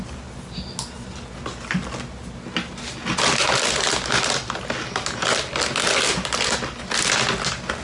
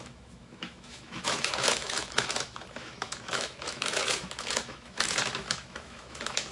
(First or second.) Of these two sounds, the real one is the first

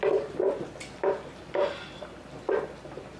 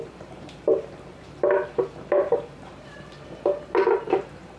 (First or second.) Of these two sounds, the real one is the first